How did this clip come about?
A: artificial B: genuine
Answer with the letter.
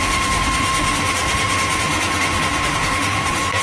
A